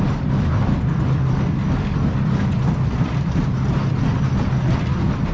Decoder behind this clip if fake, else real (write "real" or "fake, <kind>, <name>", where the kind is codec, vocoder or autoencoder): real